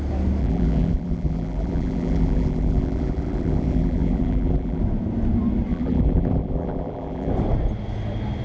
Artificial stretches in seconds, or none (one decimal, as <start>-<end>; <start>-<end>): 0.4-4.8; 5.7-7.3